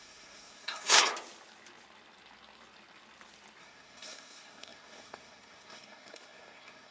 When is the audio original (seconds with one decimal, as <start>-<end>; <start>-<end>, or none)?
1.1-3.6